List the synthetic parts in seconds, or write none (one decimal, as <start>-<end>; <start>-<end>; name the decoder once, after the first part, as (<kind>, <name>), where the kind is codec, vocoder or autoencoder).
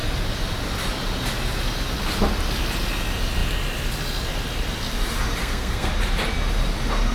5.4-5.9 (codec, SNAC)